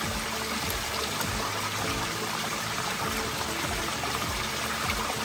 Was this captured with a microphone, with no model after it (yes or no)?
yes